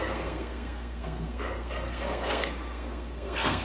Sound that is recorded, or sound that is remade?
remade